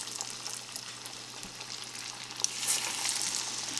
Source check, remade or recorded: recorded